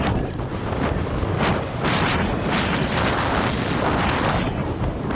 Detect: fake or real real